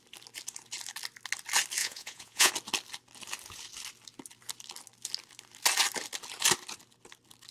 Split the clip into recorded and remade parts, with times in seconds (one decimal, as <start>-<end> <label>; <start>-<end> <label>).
0.0-1.8 recorded; 1.8-2.5 remade; 2.5-7.5 recorded